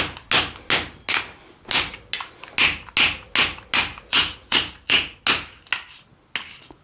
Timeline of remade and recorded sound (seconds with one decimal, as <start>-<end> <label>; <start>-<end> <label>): 0.0-3.9 recorded; 3.9-5.2 remade; 5.2-6.8 recorded